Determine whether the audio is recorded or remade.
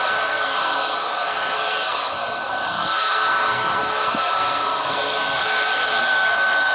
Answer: remade